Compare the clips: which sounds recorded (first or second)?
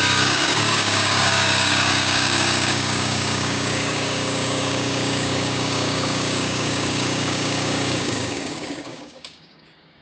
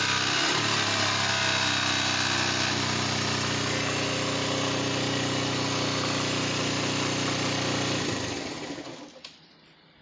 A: second